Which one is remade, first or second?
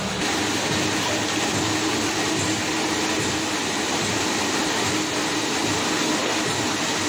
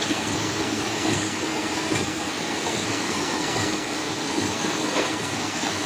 second